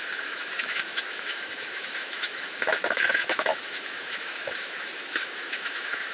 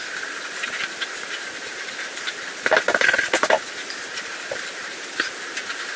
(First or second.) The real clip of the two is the second